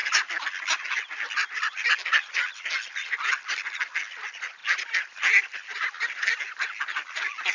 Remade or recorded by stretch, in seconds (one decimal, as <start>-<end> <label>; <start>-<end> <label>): 0.0-7.5 recorded